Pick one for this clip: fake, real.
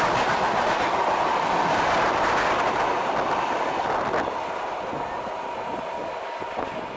real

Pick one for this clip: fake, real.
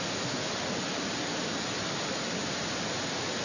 real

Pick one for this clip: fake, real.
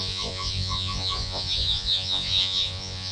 fake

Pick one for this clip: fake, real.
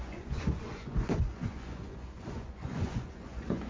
fake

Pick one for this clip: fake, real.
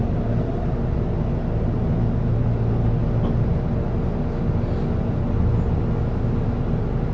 real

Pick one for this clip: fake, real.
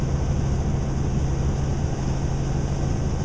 real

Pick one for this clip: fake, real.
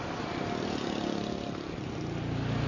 real